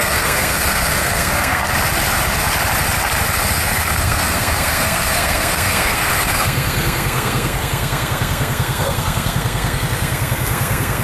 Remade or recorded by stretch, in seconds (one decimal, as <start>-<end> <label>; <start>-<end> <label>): 0.0-1.6 remade; 1.6-3.5 recorded; 3.5-11.0 remade